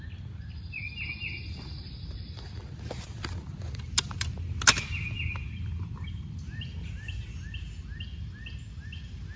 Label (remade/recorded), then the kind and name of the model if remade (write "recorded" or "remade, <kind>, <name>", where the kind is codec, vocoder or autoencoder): recorded